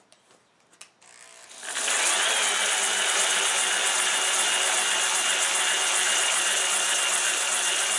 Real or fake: real